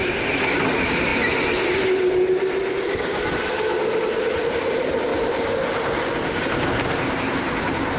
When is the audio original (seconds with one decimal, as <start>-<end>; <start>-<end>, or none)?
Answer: 0.0-8.0

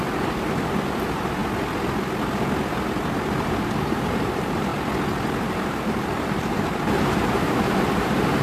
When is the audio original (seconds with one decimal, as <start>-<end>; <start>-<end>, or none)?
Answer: 1.4-3.6; 4.7-5.3

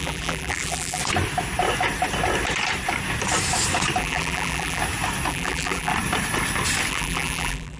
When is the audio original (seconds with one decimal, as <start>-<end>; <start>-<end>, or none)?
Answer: 1.0-4.0; 4.8-5.3; 5.9-6.9

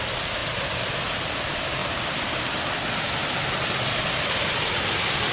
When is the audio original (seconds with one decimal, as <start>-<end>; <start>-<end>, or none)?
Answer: 0.0-1.8; 2.4-5.3

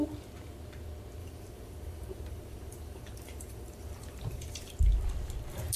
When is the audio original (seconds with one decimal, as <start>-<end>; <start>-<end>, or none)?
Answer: 0.0-1.2; 4.7-5.8

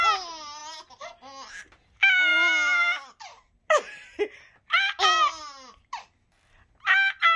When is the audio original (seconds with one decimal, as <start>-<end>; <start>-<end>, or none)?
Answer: 0.0-7.4